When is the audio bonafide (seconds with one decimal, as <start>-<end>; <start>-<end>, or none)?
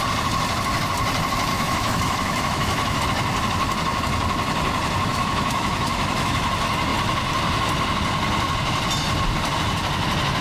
0.0-1.5; 3.0-5.1; 6.5-10.4